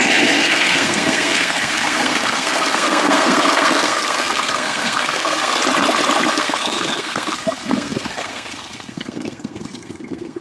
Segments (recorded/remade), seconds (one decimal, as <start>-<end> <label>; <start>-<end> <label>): 0.0-5.6 remade; 5.6-6.3 recorded; 6.3-10.4 remade